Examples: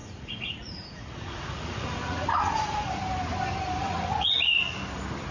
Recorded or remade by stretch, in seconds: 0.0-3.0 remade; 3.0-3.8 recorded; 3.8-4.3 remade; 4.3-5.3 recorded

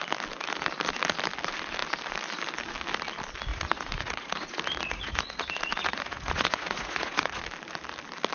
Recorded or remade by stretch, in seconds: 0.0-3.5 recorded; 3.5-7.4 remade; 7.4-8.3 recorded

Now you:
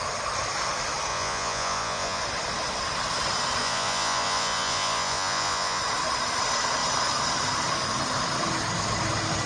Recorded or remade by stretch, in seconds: 0.0-1.1 recorded; 1.1-2.2 remade; 2.2-3.6 recorded; 3.6-5.8 remade; 5.8-9.5 recorded

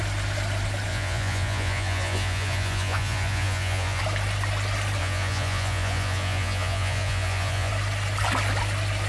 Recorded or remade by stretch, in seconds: 0.0-0.9 recorded; 0.9-4.0 remade; 4.0-5.0 recorded; 5.0-7.7 remade; 7.7-9.1 recorded

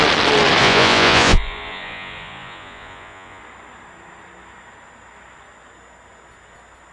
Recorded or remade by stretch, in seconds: 0.0-0.6 recorded; 0.6-3.4 remade; 3.4-6.9 recorded